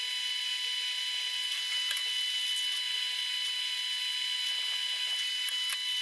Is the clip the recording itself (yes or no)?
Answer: yes